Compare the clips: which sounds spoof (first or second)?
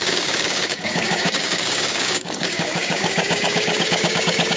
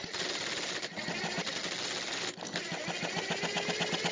first